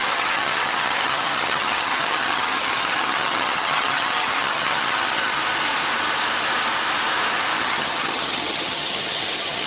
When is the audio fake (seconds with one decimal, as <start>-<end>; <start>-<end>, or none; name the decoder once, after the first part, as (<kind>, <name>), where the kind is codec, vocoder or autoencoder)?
0.0-5.4 (vocoder, HiFi-GAN); 7.6-9.7